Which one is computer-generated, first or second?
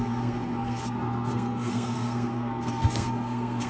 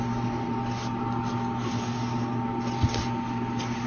first